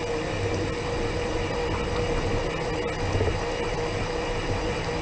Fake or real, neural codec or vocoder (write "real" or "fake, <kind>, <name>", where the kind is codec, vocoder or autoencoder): real